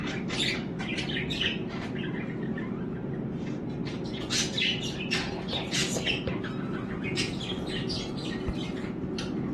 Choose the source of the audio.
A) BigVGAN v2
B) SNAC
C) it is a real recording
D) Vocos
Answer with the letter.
C